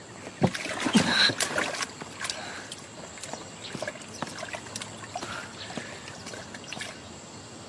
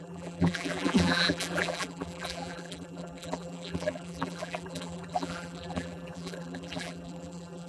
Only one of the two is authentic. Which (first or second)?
first